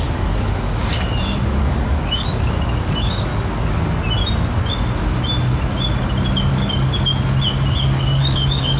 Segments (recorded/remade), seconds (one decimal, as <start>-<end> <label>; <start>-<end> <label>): 0.0-0.8 remade; 0.8-1.6 recorded; 1.6-3.3 remade; 3.3-6.5 recorded; 6.5-7.1 remade; 7.1-7.7 recorded; 7.7-8.8 remade